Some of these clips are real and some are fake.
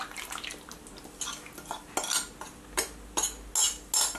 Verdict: real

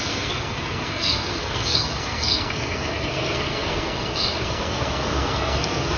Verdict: fake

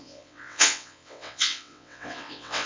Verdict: fake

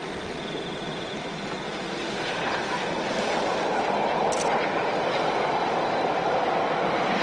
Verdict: real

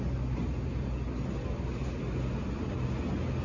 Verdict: real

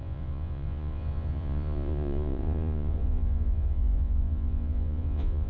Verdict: fake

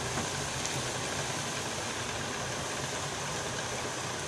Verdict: real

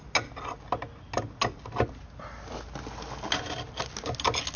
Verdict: real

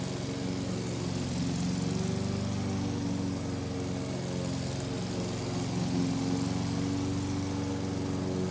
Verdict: real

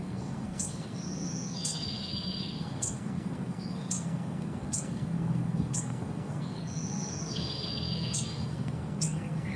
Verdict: fake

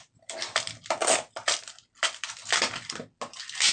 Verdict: real